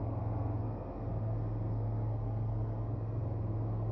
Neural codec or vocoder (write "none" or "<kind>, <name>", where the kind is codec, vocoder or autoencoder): codec, SNAC